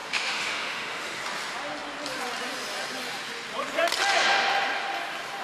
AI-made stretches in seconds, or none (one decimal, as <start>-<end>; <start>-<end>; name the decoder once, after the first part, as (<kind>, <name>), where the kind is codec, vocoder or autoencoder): 0.0-1.2 (autoencoder, DAC-VAE)